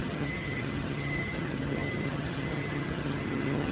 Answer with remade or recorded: remade